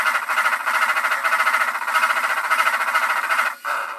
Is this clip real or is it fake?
fake